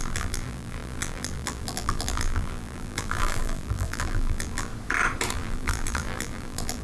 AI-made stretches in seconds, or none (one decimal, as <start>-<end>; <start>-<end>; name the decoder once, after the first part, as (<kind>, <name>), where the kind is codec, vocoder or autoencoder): 0.0-4.7 (vocoder, BigVGAN v2); 5.3-6.8

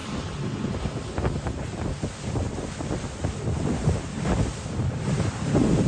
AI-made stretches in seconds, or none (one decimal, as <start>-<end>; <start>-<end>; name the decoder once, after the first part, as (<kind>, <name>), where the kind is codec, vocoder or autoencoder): none

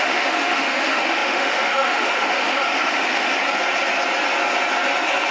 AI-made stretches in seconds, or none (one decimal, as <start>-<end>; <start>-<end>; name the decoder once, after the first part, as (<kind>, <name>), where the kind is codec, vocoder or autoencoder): 0.0-3.3 (autoencoder, DAC-VAE)

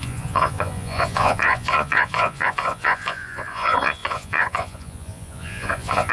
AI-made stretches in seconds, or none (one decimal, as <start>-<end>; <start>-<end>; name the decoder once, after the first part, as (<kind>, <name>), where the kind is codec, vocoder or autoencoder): 0.0-6.1 (vocoder, Vocos)